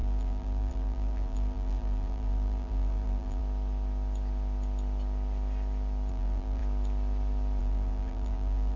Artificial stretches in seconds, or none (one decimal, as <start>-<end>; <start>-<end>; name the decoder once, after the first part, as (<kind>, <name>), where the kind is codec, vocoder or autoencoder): 0.0-3.4 (vocoder, BigVGAN v2); 6.1-6.6; 7.6-8.8